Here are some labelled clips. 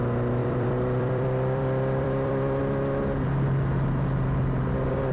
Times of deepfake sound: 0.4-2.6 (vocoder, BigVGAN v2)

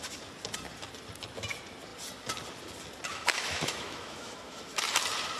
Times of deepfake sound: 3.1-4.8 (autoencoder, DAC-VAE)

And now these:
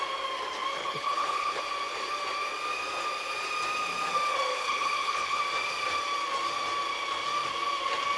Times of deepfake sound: 0.8-1.6 (codec, HILCodec); 4.5-5.4

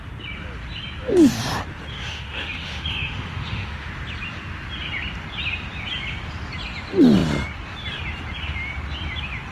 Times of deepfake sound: 1.9-3.9 (autoencoder, DAC-VAE)

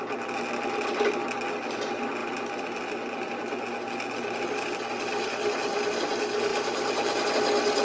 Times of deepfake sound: 6.5-7.3 (vocoder, BigVGAN v2)